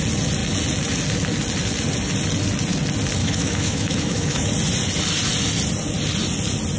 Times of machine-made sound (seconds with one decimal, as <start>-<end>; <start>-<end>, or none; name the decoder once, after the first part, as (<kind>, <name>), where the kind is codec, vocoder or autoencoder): 3.2-4.5 (autoencoder, DAC-VAE)